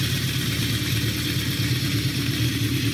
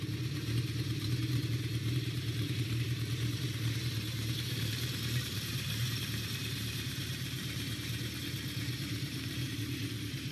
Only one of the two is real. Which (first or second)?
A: first